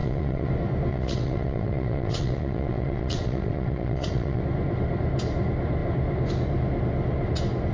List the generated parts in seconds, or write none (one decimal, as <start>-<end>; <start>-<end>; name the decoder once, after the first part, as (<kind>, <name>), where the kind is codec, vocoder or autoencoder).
0.0-0.5 (vocoder, WaveNeXt); 0.9-4.4